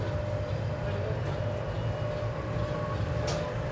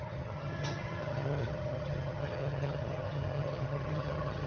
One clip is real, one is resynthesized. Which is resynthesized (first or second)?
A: second